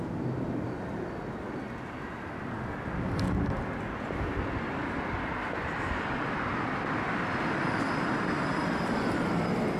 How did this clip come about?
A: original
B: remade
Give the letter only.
A